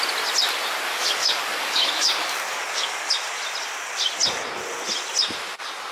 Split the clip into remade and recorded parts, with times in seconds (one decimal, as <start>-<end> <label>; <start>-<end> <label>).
0.0-0.9 recorded; 0.9-3.1 remade; 3.1-5.9 recorded